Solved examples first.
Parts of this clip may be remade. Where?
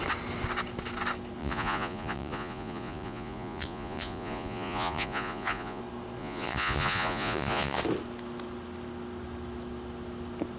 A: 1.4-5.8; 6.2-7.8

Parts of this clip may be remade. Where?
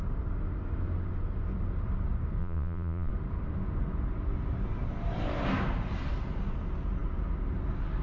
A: 2.4-3.1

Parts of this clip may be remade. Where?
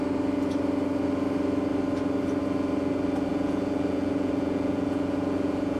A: 3.3-5.8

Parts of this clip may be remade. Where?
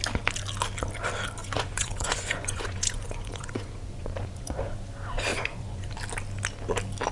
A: 1.4-4.6; 5.3-5.9